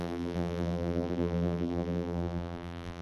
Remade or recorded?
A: remade